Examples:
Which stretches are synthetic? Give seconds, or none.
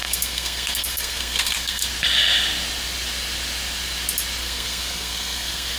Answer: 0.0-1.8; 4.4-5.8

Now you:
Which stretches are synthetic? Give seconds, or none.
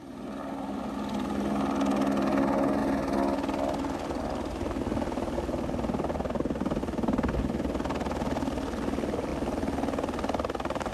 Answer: none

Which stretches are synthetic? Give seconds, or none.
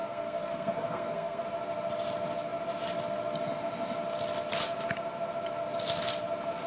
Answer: 0.0-1.4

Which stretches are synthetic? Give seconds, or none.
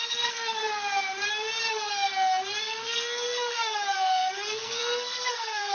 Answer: 0.0-0.6; 1.7-2.1; 2.6-5.7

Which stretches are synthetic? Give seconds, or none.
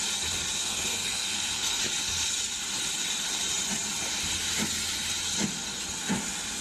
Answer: 0.6-1.8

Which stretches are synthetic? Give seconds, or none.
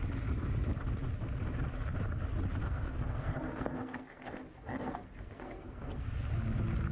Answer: 2.6-6.2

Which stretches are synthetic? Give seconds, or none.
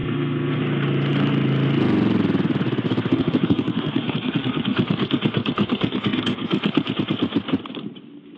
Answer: 0.0-0.6; 3.1-6.9